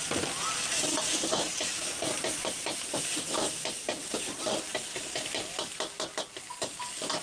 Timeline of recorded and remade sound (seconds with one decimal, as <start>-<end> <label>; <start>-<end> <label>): 0.0-1.7 recorded; 1.7-4.0 remade; 4.0-7.2 recorded